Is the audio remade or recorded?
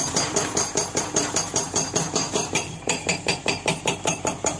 remade